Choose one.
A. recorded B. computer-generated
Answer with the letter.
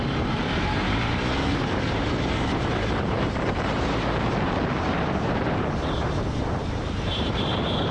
B